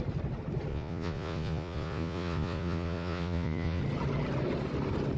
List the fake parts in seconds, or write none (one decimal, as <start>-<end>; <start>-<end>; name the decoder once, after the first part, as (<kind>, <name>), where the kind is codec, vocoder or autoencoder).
0.7-3.8 (vocoder, Vocos)